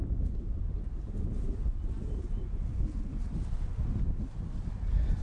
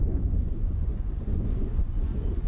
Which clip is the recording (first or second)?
first